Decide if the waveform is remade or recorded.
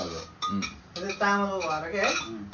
recorded